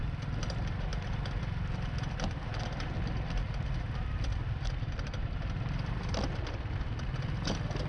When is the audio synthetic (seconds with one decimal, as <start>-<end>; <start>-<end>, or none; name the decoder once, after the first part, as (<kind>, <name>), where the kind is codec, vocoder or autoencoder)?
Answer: none